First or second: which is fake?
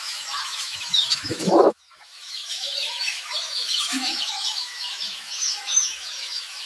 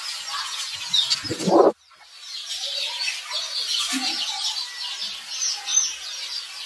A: first